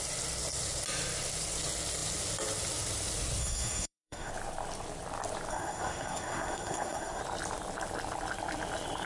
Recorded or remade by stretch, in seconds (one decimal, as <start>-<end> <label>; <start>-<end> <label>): 0.0-3.4 recorded; 3.4-4.3 remade; 4.3-5.5 recorded; 5.5-7.2 remade; 7.2-9.1 recorded